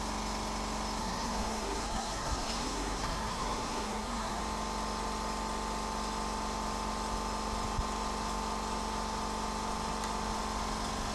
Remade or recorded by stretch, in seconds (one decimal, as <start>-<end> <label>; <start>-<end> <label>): 0.0-1.0 recorded; 1.0-4.4 remade; 4.4-11.1 recorded

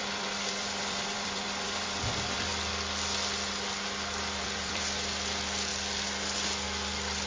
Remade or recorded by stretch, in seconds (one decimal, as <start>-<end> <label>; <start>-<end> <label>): 0.0-2.5 remade; 2.5-4.4 recorded; 4.4-5.7 remade; 5.7-7.3 recorded

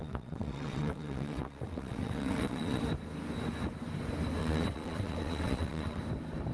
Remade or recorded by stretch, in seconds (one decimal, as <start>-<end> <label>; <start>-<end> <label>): 0.0-2.8 remade; 2.8-4.4 recorded; 4.4-6.0 remade; 6.0-6.5 recorded

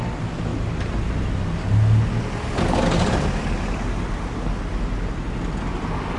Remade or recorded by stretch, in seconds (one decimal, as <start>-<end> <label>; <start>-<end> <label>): 0.0-6.2 recorded

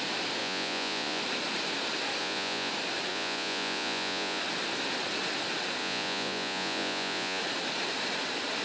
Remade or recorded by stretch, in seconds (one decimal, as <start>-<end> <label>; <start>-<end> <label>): 0.0-0.4 recorded; 0.4-1.2 remade; 1.2-2.2 recorded; 2.2-2.7 remade; 2.7-3.1 recorded; 3.1-4.4 remade; 4.4-5.8 recorded; 5.8-7.4 remade; 7.4-8.6 recorded

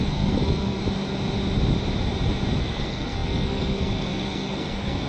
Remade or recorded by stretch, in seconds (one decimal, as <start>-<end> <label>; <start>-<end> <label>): 0.0-0.8 remade; 0.8-2.6 recorded; 2.6-5.1 remade